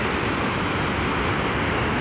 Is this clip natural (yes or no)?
yes